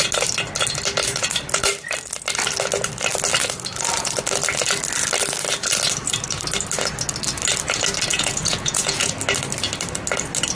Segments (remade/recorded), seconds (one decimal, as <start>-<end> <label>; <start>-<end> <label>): 0.0-8.1 recorded; 8.1-9.1 remade; 9.1-10.5 recorded